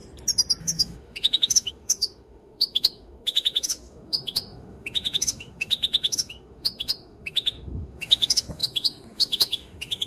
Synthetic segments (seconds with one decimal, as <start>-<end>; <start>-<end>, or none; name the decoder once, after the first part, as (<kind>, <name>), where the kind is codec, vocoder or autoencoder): 0.6-10.1 (autoencoder, DAC-VAE)